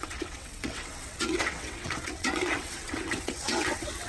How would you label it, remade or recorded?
remade